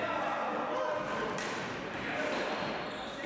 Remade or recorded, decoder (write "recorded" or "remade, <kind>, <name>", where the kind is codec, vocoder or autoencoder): remade, vocoder, BigVGAN v2